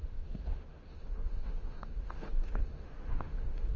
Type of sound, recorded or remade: remade